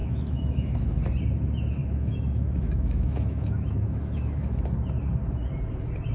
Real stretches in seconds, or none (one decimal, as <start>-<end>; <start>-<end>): 1.0-1.8; 4.6-6.1